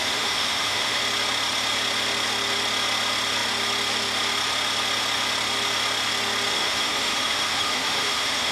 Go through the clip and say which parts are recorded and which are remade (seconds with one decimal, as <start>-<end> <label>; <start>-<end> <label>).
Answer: 0.0-1.0 remade; 1.0-6.5 recorded; 6.5-8.5 remade